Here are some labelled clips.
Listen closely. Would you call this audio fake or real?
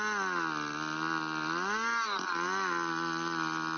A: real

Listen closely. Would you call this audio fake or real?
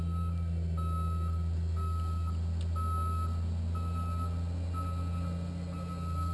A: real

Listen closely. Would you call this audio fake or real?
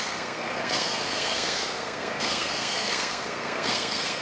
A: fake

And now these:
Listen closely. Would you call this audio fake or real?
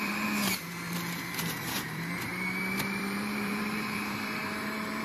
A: fake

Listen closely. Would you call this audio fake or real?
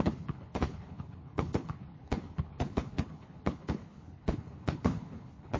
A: fake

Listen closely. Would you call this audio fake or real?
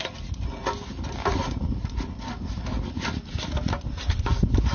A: real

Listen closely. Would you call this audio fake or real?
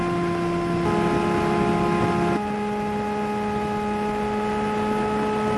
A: real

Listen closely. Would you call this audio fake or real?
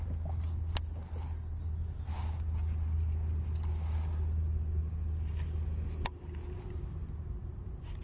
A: real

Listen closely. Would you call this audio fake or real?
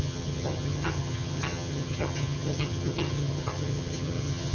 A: fake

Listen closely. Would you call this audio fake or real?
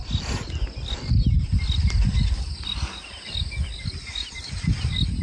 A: real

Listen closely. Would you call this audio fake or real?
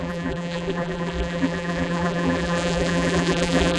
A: fake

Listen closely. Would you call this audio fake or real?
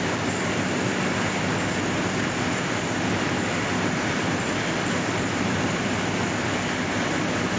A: real